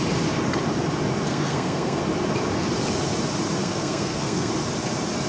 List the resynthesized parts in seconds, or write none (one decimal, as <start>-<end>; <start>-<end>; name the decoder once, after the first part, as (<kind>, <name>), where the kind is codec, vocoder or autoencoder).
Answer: 1.3-2.0 (codec, SNAC); 3.6-4.5